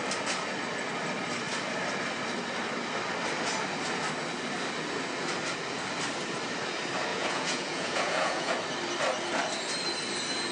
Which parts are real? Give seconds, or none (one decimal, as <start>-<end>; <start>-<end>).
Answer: 0.0-7.1; 8.5-10.5